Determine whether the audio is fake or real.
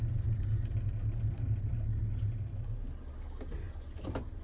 real